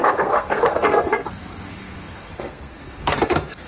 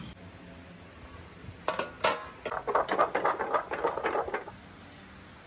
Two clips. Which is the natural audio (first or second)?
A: second